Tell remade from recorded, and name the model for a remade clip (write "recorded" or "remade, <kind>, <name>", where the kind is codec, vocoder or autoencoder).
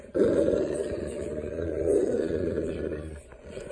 remade, vocoder, Vocos